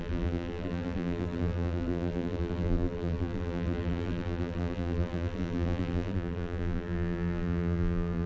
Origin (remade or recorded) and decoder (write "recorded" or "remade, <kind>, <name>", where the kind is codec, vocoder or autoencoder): remade, vocoder, BigVGAN v2